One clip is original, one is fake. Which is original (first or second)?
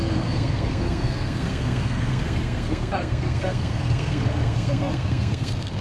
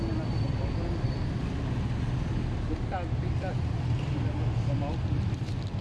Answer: second